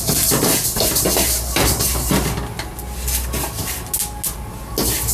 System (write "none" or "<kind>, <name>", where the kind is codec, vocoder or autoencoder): none